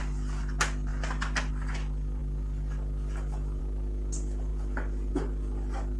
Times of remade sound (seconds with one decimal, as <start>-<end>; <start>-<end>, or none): none